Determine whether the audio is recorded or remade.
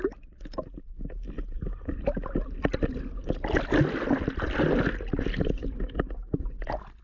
recorded